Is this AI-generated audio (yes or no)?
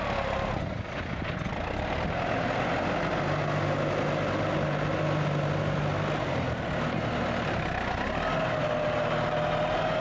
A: no